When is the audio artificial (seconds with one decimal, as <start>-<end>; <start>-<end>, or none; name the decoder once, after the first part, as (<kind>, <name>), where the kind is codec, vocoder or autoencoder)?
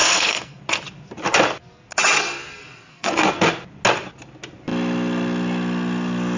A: 0.0-0.6 (codec, SNAC); 2.9-3.5